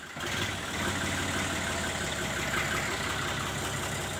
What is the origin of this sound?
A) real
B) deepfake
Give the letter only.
A